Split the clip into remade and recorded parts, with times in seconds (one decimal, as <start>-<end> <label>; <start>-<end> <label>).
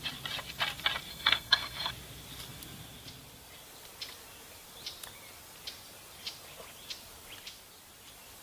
0.0-1.1 recorded; 1.1-1.9 remade; 1.9-8.4 recorded